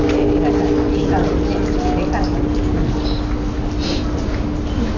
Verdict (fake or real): real